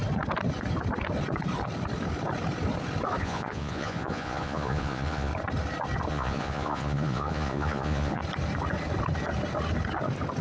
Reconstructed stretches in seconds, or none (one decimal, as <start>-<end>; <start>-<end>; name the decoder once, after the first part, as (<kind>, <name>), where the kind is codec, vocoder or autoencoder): 3.2-5.3 (vocoder, Vocos); 6.1-8.2